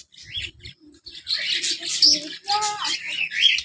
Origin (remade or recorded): recorded